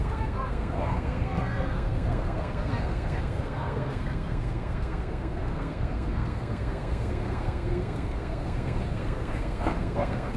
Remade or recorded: remade